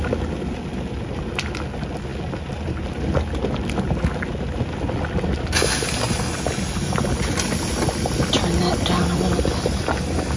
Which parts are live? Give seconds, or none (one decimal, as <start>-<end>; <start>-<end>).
0.0-10.4